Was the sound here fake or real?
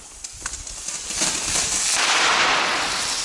real